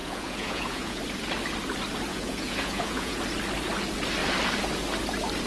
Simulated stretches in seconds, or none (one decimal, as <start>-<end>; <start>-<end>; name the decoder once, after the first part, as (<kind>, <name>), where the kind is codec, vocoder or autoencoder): 0.0-1.0 (vocoder, Vocos); 2.1-3.2